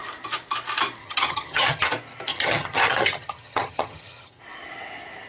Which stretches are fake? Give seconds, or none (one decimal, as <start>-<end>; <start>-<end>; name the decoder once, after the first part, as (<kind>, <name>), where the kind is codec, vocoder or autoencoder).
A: 1.0-1.9 (vocoder, HiFi-GAN); 2.3-4.4

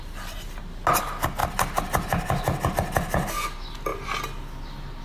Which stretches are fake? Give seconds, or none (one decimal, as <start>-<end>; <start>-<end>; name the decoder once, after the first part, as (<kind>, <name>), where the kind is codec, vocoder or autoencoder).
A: none

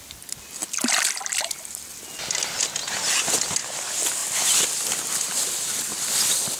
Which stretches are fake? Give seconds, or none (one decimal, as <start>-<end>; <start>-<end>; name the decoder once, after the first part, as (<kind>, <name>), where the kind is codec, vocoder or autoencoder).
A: 0.0-0.6 (vocoder, BigVGAN v2); 1.2-1.9; 2.6-4.2; 5.0-6.6

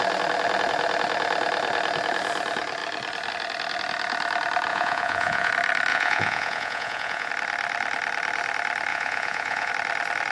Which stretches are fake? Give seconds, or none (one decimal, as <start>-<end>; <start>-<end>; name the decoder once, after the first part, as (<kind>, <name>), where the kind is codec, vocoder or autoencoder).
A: 4.7-5.5 (vocoder, Vocos); 5.9-7.3; 8.9-9.7